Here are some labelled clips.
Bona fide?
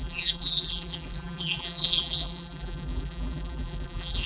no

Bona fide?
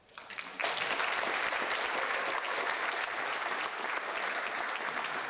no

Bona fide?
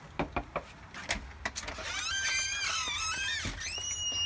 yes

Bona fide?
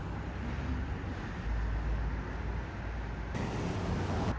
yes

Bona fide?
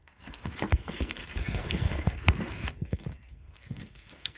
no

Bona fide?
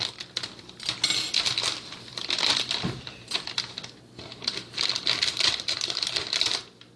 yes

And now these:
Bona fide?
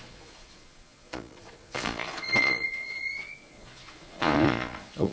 no